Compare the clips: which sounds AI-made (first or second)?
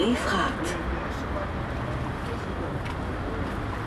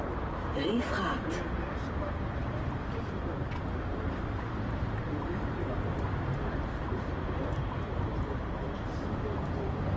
second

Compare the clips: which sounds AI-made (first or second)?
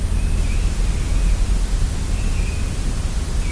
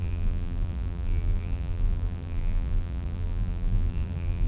second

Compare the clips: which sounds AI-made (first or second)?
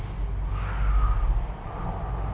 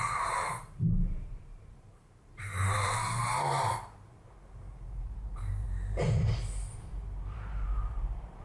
second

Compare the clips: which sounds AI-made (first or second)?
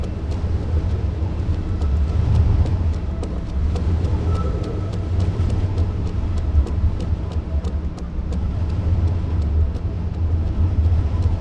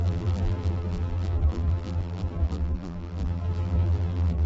second